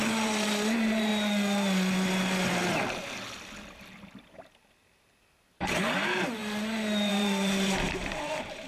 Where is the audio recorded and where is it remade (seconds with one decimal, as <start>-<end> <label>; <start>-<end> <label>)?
0.0-1.1 remade; 1.1-4.3 recorded; 4.3-6.4 remade; 6.4-7.1 recorded; 7.1-8.7 remade